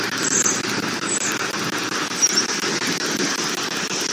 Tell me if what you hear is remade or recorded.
recorded